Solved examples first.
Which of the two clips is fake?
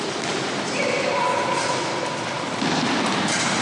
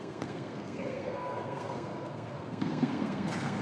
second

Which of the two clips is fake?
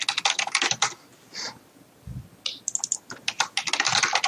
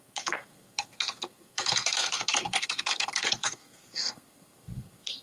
second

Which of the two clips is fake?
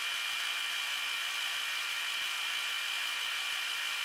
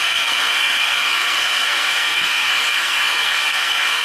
second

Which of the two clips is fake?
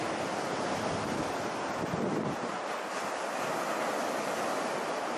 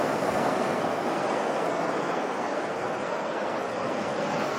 second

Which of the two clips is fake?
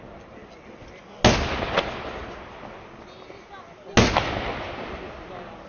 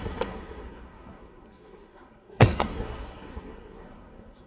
second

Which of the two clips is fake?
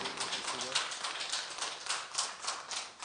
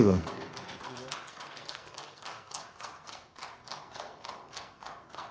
second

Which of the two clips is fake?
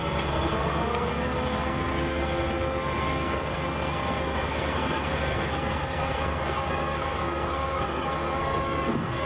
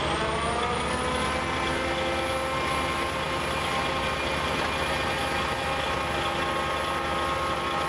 first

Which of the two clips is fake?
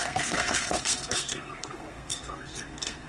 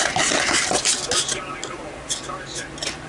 first